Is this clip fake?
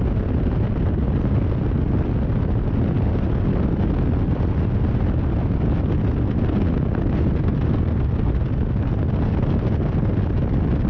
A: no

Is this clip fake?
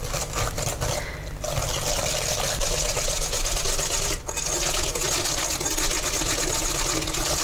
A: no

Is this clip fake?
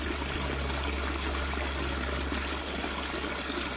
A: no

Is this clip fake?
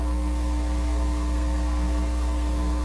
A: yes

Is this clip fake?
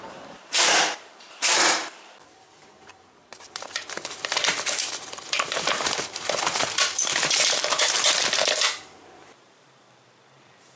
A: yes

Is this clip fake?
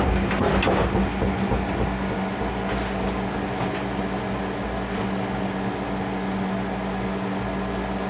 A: no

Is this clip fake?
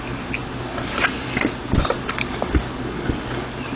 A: no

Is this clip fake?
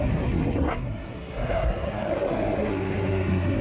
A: yes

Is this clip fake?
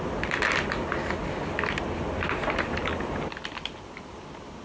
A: no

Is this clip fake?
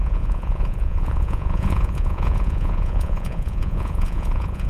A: yes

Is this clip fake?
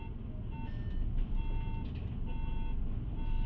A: no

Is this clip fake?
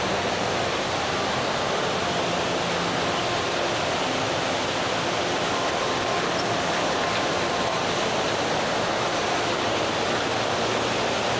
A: no